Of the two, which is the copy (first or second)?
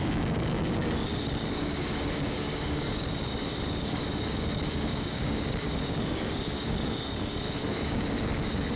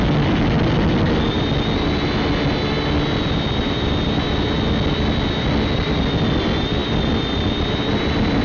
first